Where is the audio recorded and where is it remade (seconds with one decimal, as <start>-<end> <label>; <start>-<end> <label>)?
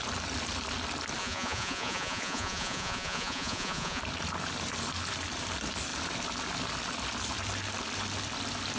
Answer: 0.0-1.2 recorded; 1.2-4.0 remade; 4.0-8.8 recorded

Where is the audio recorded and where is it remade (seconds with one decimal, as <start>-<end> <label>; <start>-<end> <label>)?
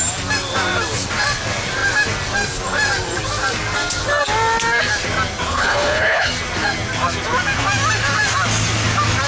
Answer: 0.0-5.5 recorded; 5.5-6.3 remade; 6.3-9.3 recorded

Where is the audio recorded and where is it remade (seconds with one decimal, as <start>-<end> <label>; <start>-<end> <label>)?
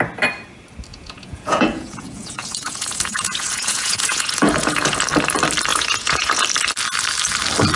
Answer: 0.0-0.9 recorded; 0.9-5.0 remade; 5.0-5.7 recorded; 5.7-6.4 remade; 6.4-7.8 recorded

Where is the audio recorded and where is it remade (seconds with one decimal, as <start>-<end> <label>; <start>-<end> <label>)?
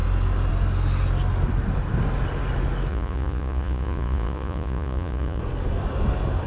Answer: 0.0-2.9 recorded; 2.9-5.4 remade; 5.4-6.5 recorded